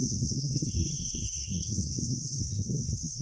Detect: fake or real fake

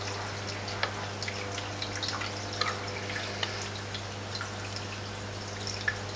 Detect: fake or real real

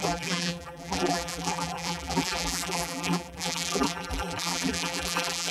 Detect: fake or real fake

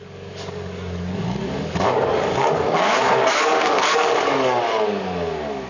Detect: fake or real fake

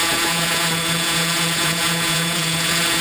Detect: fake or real fake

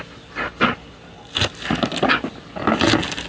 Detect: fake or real real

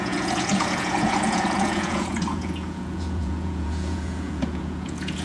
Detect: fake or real fake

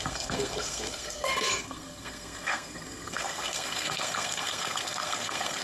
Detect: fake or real fake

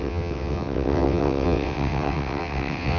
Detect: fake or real fake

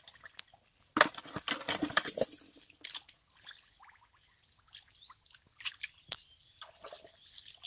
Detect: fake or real fake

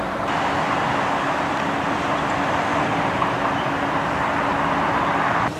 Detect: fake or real real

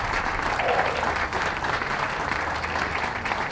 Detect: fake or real fake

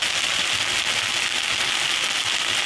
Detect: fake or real real